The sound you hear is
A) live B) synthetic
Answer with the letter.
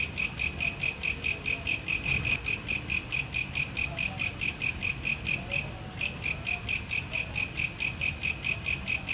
A